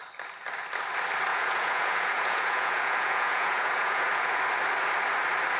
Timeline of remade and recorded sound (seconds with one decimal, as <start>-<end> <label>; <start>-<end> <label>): 0.0-1.3 recorded; 1.3-4.4 remade; 4.4-5.6 recorded